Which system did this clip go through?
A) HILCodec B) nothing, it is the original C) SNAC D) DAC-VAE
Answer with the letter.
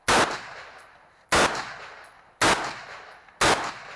B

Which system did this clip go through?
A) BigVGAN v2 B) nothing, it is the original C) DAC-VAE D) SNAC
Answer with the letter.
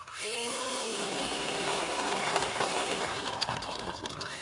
D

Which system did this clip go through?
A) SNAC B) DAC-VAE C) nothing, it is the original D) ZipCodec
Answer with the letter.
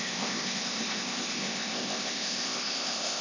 D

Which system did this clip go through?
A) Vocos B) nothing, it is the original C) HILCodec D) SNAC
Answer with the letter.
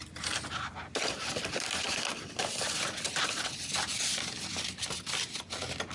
B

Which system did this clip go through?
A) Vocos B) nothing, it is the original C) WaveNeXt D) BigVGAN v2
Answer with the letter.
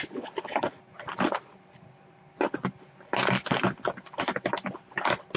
B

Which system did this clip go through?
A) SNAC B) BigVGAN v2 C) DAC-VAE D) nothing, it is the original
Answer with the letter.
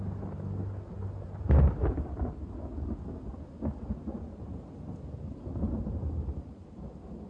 D